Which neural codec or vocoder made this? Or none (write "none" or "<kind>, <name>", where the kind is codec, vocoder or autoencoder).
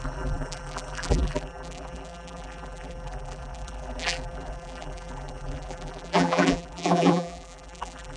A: vocoder, BigVGAN v2